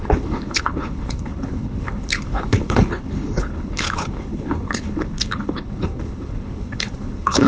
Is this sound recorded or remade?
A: remade